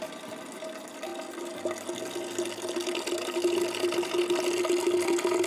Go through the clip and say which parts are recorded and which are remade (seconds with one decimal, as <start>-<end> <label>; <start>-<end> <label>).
0.0-5.5 recorded